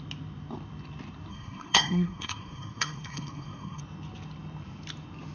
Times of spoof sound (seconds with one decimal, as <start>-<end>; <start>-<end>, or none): 1.3-3.8